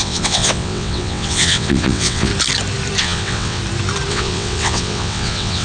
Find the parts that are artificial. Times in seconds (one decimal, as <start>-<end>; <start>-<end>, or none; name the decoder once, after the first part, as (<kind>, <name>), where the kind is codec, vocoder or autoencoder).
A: 0.0-2.3 (vocoder, WaveNeXt); 3.0-3.6; 4.1-5.6